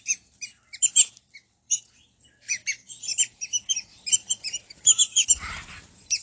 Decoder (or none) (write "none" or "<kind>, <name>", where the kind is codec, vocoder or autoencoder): vocoder, BigVGAN v2